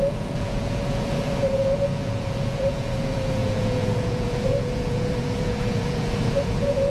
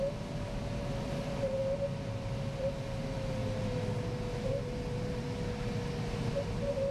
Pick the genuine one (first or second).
second